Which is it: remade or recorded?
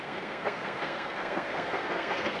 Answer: remade